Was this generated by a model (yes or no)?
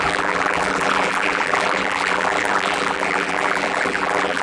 yes